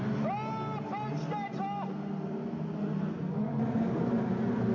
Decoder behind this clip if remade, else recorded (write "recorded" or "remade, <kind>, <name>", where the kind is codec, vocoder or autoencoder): recorded